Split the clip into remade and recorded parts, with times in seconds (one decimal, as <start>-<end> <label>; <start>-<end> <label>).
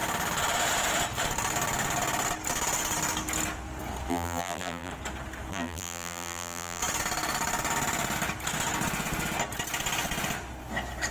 0.0-4.1 recorded; 4.1-4.9 remade; 4.9-5.5 recorded; 5.5-6.8 remade; 6.8-11.1 recorded